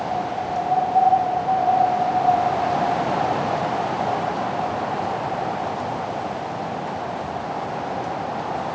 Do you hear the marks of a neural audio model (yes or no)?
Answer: no